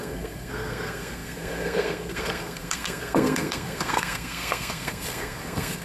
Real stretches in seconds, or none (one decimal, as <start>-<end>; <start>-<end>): none